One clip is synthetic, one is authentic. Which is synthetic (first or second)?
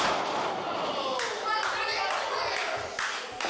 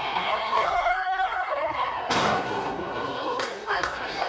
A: second